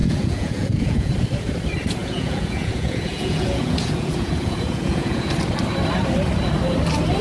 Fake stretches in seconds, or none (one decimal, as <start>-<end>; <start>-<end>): 0.0-1.1; 2.0-5.3